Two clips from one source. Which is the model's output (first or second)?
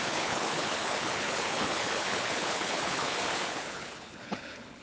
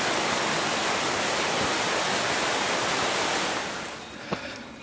first